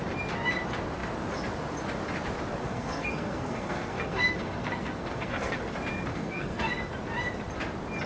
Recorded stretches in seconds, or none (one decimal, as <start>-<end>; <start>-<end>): 0.0-2.6; 5.6-6.1; 6.9-8.1